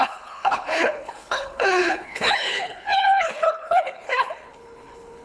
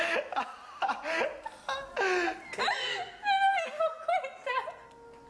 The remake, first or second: first